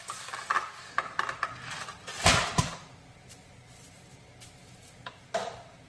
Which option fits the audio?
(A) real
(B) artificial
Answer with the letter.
A